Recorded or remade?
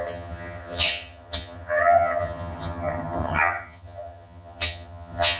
remade